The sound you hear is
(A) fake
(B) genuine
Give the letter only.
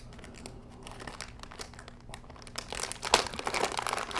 B